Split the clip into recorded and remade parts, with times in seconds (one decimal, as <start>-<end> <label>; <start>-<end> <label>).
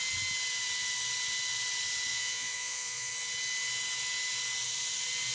0.0-2.1 recorded; 2.1-3.1 remade; 3.1-5.3 recorded